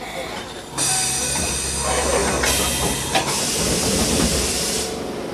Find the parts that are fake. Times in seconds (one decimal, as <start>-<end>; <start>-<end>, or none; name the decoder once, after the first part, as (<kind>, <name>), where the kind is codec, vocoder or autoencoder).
none